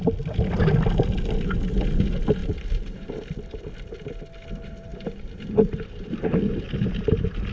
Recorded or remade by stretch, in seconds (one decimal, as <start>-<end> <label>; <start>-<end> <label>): 0.0-2.4 recorded; 2.4-3.2 remade; 3.2-4.9 recorded; 4.9-6.5 remade; 6.5-7.5 recorded